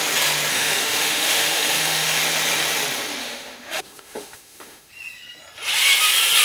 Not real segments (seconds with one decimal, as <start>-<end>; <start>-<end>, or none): 0.5-2.2; 3.2-4.9